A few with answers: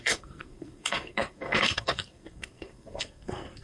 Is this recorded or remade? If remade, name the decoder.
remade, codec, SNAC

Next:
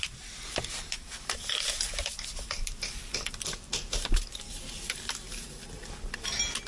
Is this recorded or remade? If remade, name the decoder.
recorded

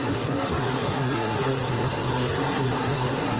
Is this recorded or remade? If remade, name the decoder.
remade, codec, SNAC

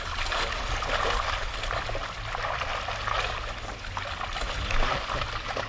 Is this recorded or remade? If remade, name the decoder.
recorded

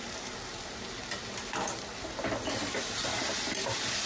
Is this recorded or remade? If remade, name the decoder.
recorded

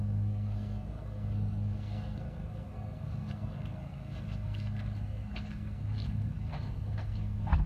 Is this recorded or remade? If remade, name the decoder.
remade, codec, SNAC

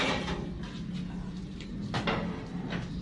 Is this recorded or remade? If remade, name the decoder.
recorded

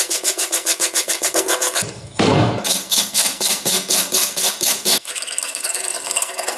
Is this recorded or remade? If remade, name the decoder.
remade, codec, SNAC